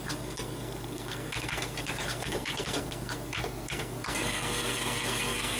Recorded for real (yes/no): no